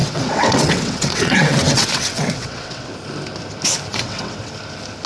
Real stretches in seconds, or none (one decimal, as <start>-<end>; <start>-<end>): 2.9-3.9; 4.5-5.1